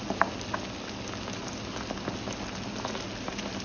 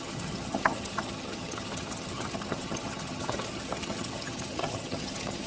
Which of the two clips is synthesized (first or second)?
second